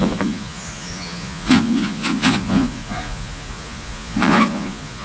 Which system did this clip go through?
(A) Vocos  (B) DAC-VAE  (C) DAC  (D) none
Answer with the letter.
A